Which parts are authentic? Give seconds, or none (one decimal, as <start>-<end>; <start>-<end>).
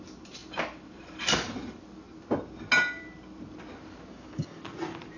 0.0-4.1; 4.6-5.2